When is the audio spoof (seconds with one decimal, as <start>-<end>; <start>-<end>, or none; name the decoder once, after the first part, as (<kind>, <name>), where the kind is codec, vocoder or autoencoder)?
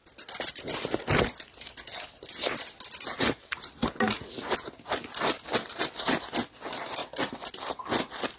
none